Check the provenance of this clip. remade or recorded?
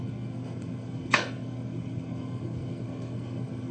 remade